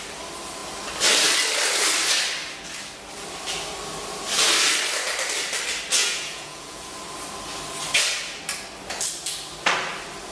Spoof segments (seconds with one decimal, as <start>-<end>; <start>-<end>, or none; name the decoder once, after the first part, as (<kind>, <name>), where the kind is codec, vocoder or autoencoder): 6.0-6.9 (vocoder, Vocos)